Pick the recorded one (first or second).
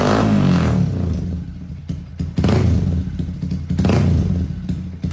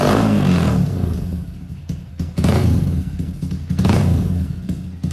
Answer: first